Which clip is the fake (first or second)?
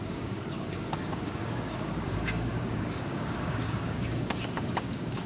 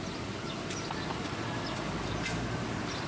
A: first